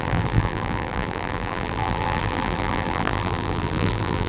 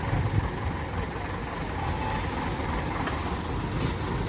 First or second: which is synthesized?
first